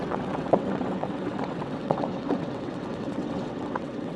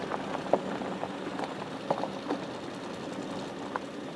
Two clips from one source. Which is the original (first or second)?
second